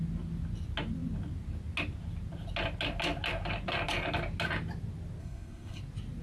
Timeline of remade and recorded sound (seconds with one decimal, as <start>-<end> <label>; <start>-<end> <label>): 0.0-5.2 recorded; 5.2-5.8 remade; 5.8-6.2 recorded